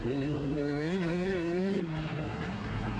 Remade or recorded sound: remade